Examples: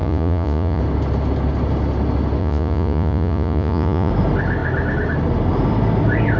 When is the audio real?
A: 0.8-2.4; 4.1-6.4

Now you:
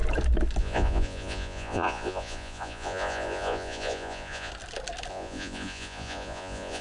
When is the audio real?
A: 0.0-0.6; 4.5-5.1

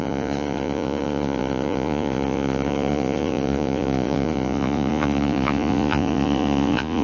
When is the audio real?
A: none